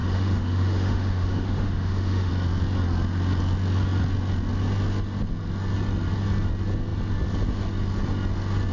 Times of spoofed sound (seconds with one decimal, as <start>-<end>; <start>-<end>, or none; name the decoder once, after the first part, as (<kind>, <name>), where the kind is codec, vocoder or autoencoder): 0.0-2.3 (autoencoder, DAC-VAE)